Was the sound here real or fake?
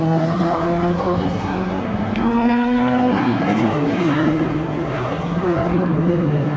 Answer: fake